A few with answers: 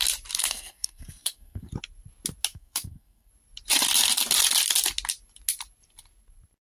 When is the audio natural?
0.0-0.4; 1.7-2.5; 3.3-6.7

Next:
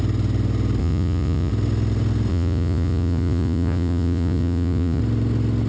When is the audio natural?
0.0-0.8; 1.5-2.3; 5.0-5.7